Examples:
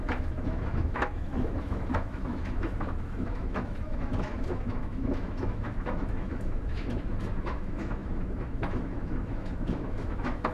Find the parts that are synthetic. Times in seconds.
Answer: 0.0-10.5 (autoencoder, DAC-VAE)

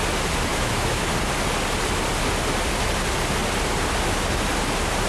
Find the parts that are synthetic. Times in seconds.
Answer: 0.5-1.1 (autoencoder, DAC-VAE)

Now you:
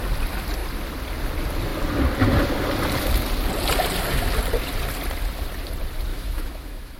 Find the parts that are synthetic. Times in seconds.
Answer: 6.1-7.0 (autoencoder, DAC-VAE)

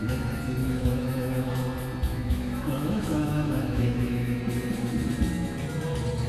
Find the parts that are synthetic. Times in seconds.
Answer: 0.6-1.5 (autoencoder, DAC-VAE); 2.1-4.4

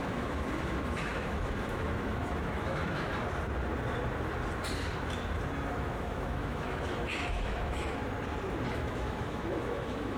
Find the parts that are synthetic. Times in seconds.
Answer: 0.0-3.1 (autoencoder, DAC-VAE); 5.7-8.0; 8.7-10.2

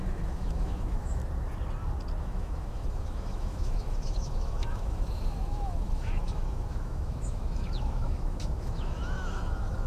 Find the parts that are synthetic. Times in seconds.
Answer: 0.0-1.2 (autoencoder, DAC-VAE); 2.2-9.9

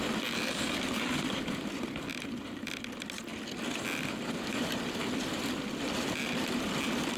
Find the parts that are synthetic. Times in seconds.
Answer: none

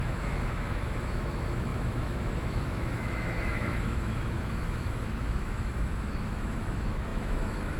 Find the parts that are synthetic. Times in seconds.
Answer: 0.0-7.8 (autoencoder, DAC-VAE)